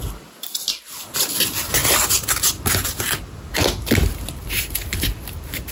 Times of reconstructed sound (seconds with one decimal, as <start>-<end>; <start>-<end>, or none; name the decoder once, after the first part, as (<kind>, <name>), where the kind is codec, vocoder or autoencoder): none